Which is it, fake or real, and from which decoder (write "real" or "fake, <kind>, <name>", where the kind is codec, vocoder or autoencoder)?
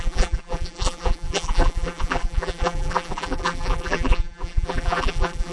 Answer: fake, vocoder, BigVGAN v2